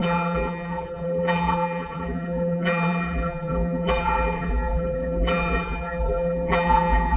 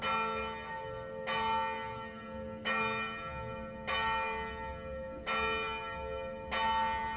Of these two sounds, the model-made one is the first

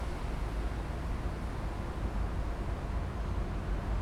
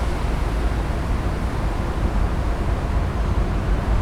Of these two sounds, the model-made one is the second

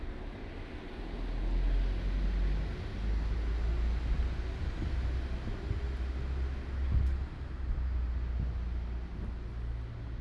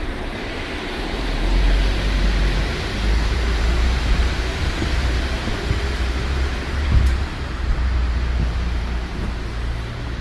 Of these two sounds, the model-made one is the second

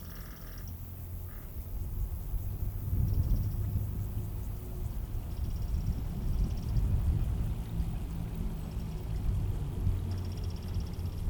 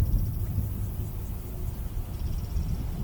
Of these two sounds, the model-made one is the second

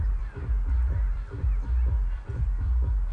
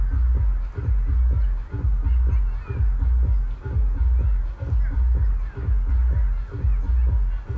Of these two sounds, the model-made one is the first